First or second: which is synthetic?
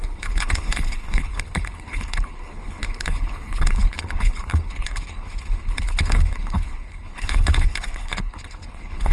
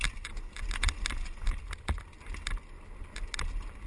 first